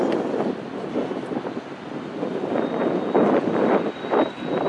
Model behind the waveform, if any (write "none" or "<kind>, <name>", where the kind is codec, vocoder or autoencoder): vocoder, BigVGAN v2